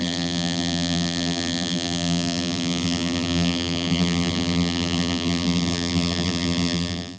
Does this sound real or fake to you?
fake